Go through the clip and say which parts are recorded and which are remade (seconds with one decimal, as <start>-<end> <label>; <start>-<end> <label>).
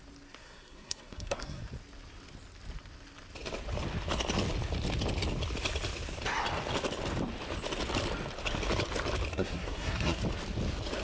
0.0-0.4 recorded; 0.4-1.6 remade; 1.6-9.3 recorded; 9.3-10.2 remade; 10.2-11.0 recorded